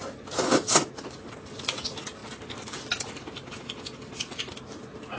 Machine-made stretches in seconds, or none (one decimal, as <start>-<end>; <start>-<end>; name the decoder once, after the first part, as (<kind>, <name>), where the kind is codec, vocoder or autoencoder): none